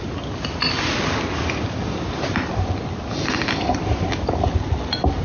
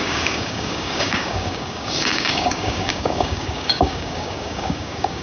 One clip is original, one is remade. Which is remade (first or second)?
second